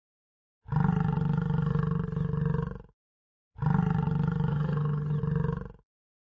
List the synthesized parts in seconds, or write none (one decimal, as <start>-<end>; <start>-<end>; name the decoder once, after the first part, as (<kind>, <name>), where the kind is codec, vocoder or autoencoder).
4.5-5.2 (vocoder, HiFi-GAN)